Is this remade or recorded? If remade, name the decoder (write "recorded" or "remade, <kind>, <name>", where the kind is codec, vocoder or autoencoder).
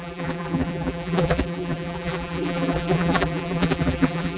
remade, vocoder, BigVGAN v2